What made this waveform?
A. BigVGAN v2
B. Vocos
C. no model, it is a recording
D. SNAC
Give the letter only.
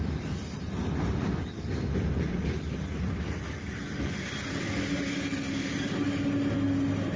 C